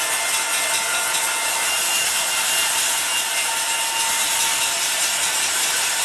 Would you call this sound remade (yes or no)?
no